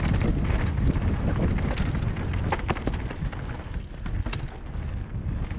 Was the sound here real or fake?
real